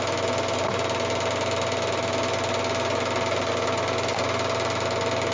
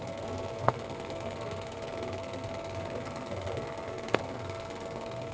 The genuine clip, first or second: first